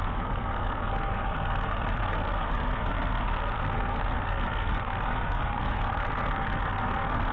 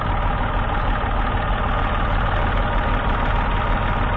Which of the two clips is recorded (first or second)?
second